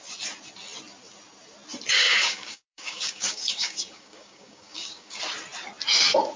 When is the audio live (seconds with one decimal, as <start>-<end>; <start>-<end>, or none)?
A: 0.0-1.9; 5.2-6.4